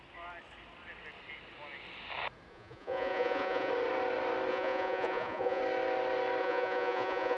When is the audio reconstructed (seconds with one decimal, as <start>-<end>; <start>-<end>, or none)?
2.5-3.7; 4.5-5.6; 6.4-7.4